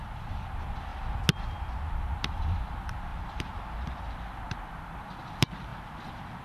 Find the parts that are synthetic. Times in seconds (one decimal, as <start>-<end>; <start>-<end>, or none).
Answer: 0.0-0.9; 1.9-3.1; 4.0-5.7